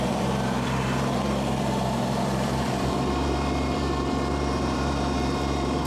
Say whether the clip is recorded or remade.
remade